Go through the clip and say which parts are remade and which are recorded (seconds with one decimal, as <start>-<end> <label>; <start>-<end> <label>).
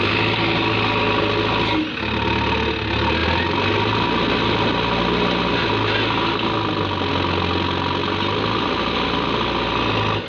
0.0-10.3 recorded